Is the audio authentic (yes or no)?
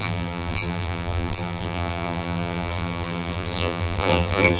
no